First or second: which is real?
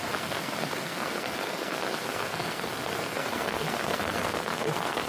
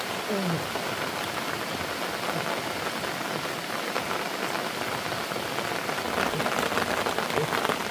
second